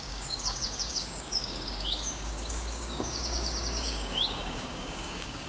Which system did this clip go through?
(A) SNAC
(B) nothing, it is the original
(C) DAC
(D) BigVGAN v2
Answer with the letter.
C